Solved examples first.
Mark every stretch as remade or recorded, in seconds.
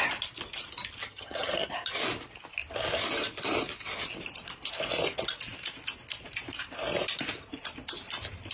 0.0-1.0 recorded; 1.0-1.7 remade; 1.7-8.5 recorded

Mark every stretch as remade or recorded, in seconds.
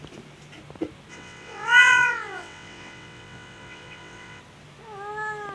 0.0-1.1 recorded; 1.1-4.4 remade; 4.4-5.5 recorded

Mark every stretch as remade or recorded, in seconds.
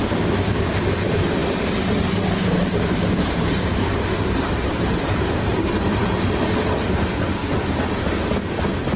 0.0-2.6 recorded; 2.6-6.0 remade; 6.0-7.4 recorded; 7.4-8.3 remade; 8.3-9.0 recorded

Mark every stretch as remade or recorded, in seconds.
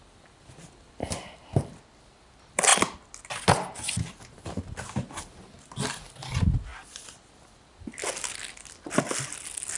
0.0-9.8 recorded